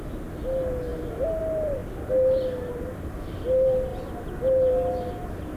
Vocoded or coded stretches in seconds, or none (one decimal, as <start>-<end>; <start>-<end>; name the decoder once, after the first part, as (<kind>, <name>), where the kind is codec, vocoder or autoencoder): none